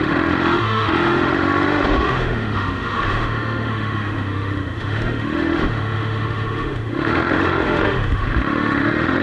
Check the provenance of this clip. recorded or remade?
remade